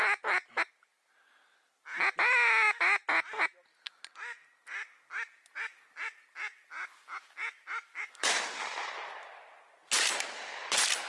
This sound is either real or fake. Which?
real